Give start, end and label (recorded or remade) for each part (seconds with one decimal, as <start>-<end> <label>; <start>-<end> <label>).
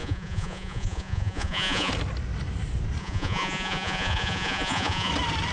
0.0-1.9 remade; 1.9-3.0 recorded; 3.0-5.1 remade; 5.1-5.5 recorded